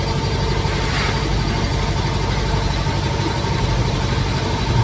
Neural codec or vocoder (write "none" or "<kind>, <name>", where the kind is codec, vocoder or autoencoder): none